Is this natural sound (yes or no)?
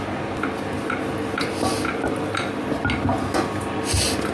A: yes